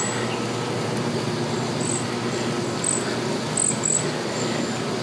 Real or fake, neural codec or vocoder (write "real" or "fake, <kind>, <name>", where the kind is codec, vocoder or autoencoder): real